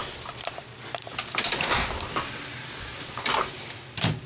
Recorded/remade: remade